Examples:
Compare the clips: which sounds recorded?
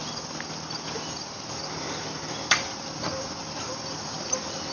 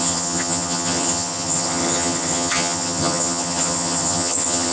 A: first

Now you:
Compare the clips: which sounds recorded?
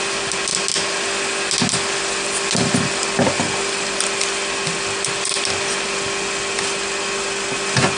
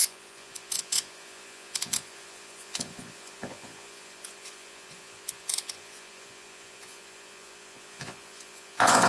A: first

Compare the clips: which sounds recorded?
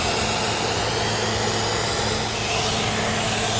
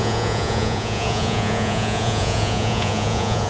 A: first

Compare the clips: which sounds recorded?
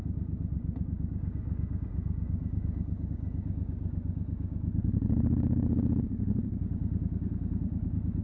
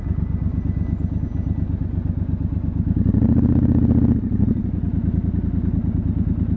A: second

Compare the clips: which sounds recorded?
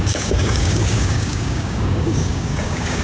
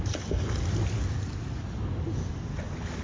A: second